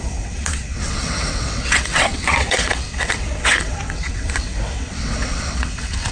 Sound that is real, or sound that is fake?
fake